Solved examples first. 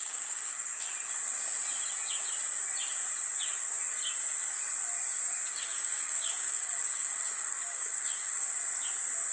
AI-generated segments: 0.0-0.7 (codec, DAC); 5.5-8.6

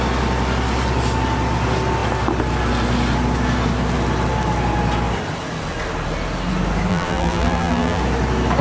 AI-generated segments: 6.9-8.0 (vocoder, BigVGAN v2)